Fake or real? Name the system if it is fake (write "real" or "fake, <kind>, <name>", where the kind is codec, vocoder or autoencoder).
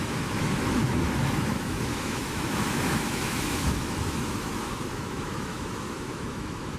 fake, autoencoder, DAC-VAE